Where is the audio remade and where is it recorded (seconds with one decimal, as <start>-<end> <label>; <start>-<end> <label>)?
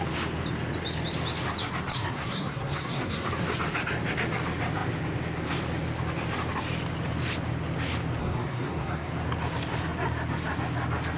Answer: 0.0-1.9 recorded; 1.9-3.3 remade; 3.3-8.2 recorded; 8.2-9.1 remade; 9.1-11.2 recorded